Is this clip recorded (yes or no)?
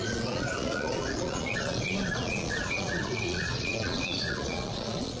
no